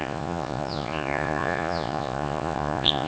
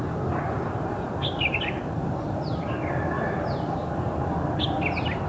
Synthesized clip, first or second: first